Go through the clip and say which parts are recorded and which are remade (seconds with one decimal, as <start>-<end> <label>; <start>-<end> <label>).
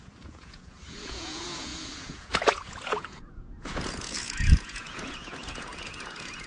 0.0-6.5 remade